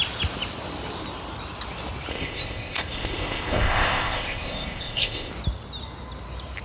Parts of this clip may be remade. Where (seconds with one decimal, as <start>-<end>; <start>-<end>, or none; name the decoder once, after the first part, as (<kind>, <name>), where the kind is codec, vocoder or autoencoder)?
2.1-5.3 (codec, ZipCodec)